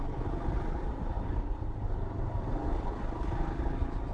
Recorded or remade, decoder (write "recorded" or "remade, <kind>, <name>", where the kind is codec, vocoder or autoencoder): recorded